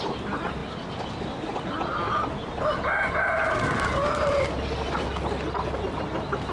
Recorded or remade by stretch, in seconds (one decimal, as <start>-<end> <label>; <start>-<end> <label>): 0.0-6.5 recorded